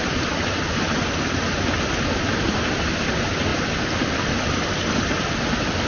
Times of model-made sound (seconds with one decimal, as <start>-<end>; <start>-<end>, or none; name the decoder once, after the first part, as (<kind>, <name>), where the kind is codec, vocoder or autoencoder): none